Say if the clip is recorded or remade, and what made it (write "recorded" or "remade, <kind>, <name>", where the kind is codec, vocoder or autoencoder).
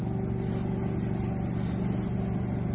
recorded